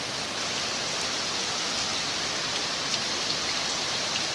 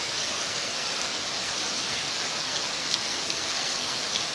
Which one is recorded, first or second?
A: first